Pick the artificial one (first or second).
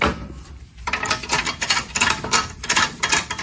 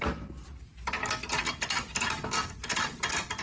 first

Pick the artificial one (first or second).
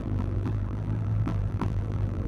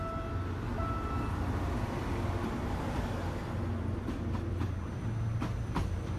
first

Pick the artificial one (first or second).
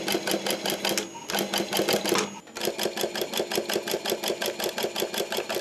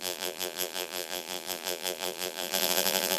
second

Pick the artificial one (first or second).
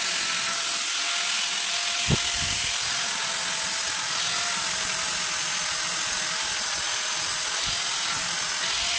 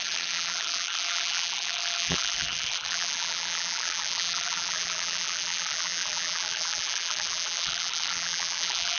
second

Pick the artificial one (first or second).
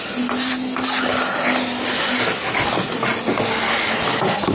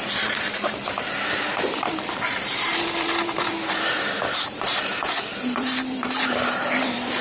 second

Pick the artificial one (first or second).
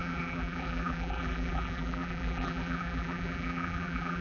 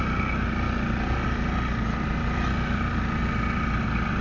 first